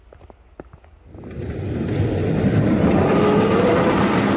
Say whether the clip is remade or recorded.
recorded